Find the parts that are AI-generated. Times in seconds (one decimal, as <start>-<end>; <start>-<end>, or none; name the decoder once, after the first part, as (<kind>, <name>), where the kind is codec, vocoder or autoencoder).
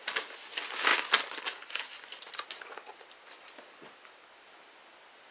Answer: none